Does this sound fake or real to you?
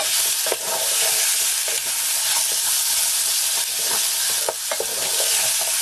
real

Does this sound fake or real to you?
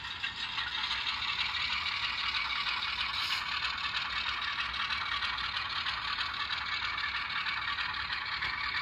real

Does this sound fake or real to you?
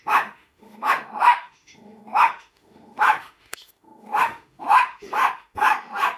fake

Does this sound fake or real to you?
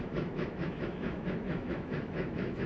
fake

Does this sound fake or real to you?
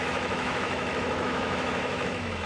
fake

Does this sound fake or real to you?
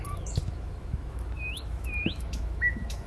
fake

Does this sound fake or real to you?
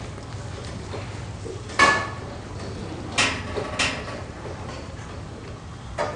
real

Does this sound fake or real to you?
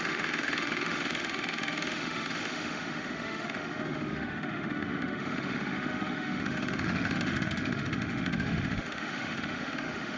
fake